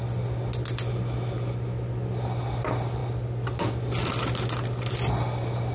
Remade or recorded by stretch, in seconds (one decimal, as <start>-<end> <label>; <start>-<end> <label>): 0.0-5.7 recorded